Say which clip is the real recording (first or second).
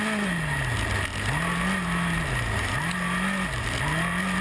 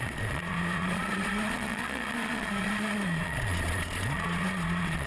first